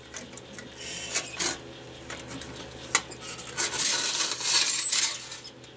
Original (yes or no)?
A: yes